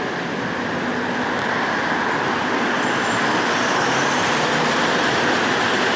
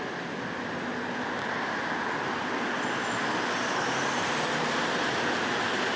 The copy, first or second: first